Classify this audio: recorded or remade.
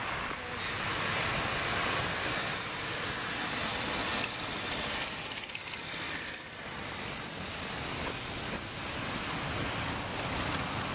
recorded